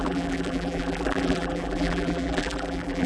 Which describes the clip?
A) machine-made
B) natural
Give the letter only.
A